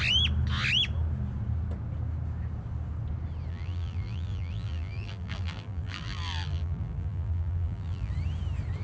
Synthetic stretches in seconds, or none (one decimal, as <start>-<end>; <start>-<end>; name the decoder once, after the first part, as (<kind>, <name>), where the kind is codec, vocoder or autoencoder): 3.5-8.1 (vocoder, BigVGAN v2)